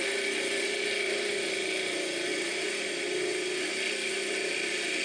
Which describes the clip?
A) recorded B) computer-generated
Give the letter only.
A